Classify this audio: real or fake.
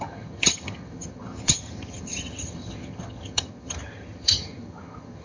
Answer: fake